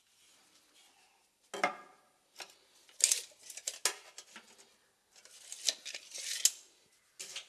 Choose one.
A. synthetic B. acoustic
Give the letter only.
B